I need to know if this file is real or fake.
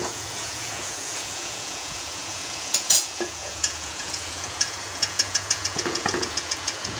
fake